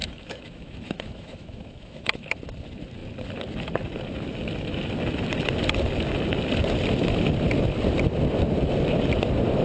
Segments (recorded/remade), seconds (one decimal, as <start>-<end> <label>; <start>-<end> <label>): 0.0-2.4 remade; 2.4-9.6 recorded